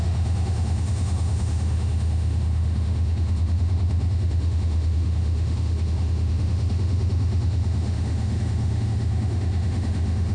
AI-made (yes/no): yes